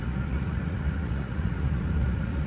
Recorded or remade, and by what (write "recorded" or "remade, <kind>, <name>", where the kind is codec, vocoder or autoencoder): remade, vocoder, Vocos